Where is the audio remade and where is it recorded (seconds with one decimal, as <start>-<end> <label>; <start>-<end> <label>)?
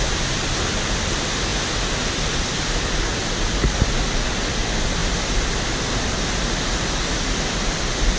0.0-8.2 recorded